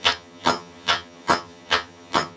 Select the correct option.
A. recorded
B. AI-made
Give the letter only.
B